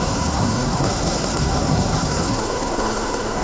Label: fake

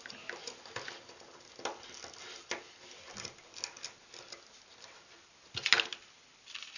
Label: real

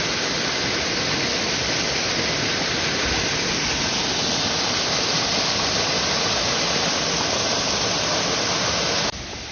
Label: real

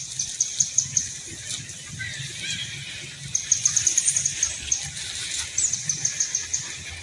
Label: real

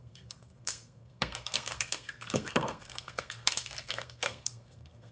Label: fake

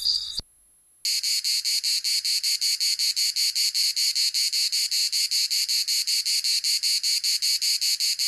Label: real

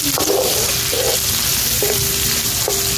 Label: real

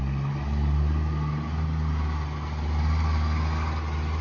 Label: real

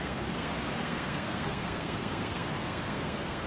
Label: fake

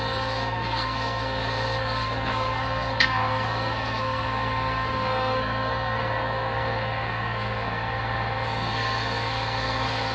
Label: fake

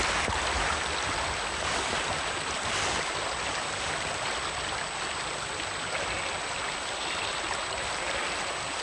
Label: real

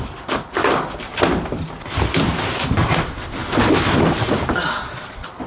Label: real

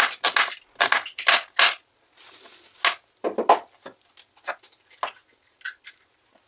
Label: real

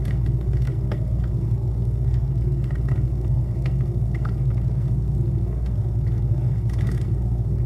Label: fake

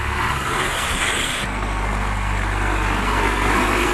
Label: fake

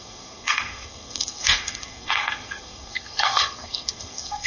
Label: fake